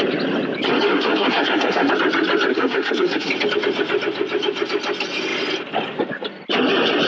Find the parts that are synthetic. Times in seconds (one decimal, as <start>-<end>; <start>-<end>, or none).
0.9-1.9; 2.5-3.3